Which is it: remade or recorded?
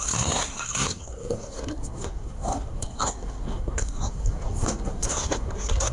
remade